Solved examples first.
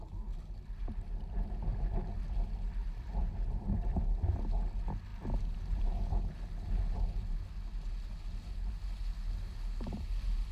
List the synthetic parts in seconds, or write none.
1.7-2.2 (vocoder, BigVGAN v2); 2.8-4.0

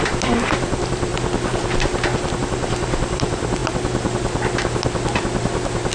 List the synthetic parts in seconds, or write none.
0.0-1.1 (vocoder, BigVGAN v2); 2.3-3.6

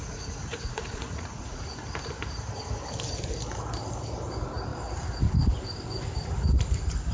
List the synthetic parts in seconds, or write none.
0.0-1.6 (vocoder, Vocos)

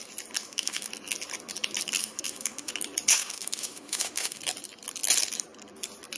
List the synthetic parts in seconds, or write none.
0.4-0.9 (autoencoder, DAC-VAE); 2.0-2.7; 3.1-4.4

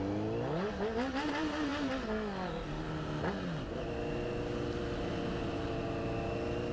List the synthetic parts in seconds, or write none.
none

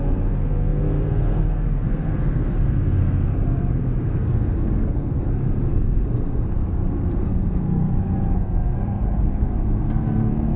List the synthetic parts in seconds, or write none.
0.0-3.3 (codec, SNAC); 4.1-10.6